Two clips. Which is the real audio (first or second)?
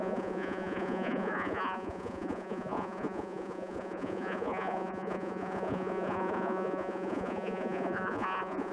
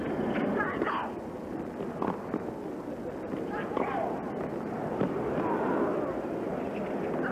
second